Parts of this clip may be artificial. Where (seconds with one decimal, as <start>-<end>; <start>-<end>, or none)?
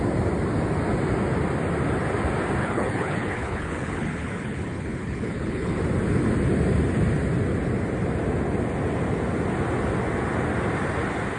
2.6-5.8